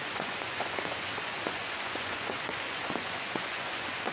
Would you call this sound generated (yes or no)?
yes